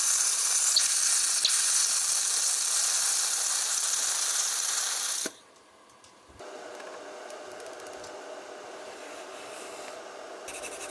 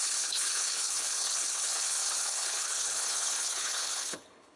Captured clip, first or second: first